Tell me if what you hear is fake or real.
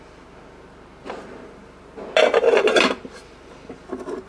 real